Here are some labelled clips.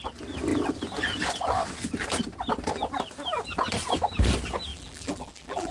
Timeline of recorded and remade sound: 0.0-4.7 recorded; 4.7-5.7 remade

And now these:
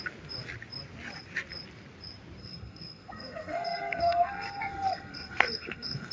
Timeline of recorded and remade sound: 0.0-2.4 recorded; 2.4-6.1 remade

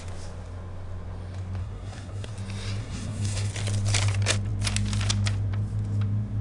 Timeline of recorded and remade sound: 0.0-1.6 recorded; 1.6-2.3 remade; 2.3-2.8 recorded; 2.8-3.5 remade; 3.5-6.4 recorded

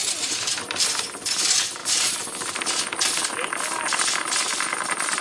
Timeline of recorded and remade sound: 0.0-1.8 recorded; 1.8-2.5 remade; 2.5-4.4 recorded; 4.4-5.2 remade

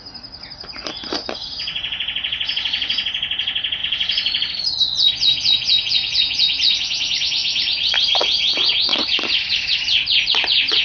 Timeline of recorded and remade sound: 0.0-3.8 recorded; 3.8-4.8 remade; 4.8-7.4 recorded; 7.4-8.1 remade; 8.1-8.9 recorded; 8.9-10.8 remade

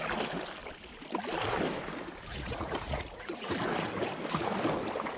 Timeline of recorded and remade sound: 0.0-2.3 recorded; 2.3-3.5 remade; 3.5-5.2 recorded

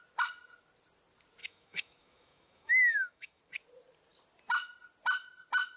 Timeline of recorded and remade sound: 0.0-1.4 recorded; 1.4-3.4 remade; 3.4-5.8 recorded

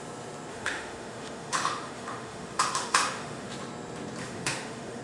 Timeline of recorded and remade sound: 0.0-0.5 recorded; 0.5-3.5 remade; 3.5-4.2 recorded; 4.2-5.0 remade